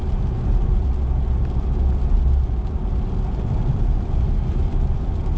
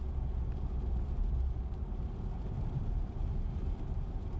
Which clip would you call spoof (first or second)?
second